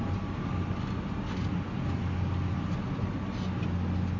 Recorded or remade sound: recorded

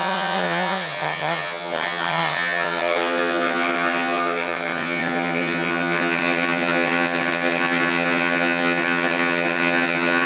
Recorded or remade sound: remade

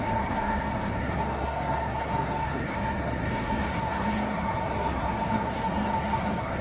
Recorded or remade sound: remade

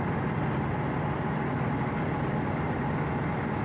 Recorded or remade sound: recorded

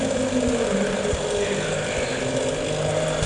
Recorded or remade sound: recorded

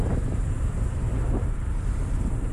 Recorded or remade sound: remade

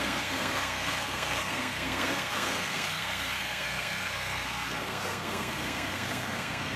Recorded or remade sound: remade